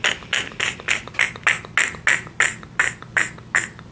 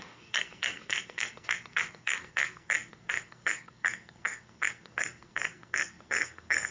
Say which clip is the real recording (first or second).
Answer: first